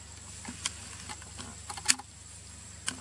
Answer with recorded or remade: recorded